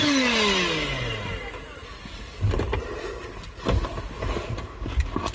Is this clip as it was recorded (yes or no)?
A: yes